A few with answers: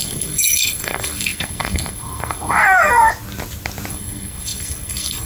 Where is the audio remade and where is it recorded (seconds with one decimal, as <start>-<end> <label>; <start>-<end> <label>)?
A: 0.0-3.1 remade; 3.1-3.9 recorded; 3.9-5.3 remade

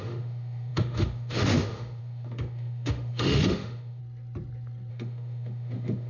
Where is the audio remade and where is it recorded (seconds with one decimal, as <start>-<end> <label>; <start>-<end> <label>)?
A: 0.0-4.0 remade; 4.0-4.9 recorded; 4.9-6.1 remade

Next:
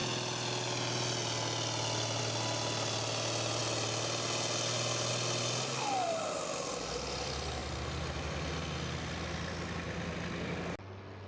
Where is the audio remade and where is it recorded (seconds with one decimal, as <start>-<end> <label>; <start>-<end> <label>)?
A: 0.0-11.3 recorded

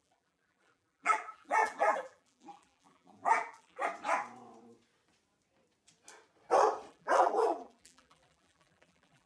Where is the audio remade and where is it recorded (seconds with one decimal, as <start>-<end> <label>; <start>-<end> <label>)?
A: 0.0-3.8 remade; 3.8-6.9 recorded; 6.9-9.3 remade

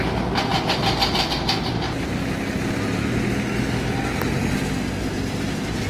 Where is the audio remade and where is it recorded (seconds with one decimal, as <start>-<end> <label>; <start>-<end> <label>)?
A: 0.0-5.9 recorded

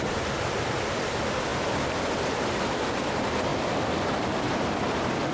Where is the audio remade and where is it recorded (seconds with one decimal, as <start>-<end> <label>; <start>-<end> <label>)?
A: 0.0-5.3 recorded

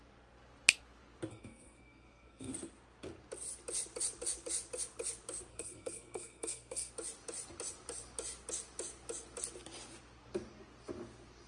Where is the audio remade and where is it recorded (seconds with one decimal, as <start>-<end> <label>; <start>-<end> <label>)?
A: 0.0-1.3 recorded; 1.3-2.5 remade; 2.5-5.5 recorded; 5.5-6.9 remade; 6.9-11.5 recorded